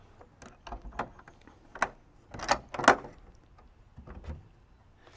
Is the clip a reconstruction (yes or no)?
no